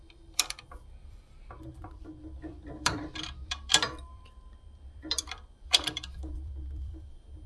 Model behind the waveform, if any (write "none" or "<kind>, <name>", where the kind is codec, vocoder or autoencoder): vocoder, BigVGAN v2